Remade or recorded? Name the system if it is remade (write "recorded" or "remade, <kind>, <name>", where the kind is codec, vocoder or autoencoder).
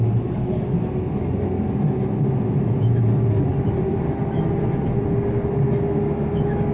recorded